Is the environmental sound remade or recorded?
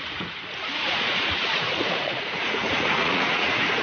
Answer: remade